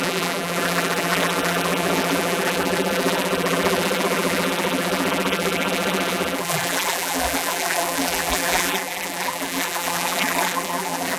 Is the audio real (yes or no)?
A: no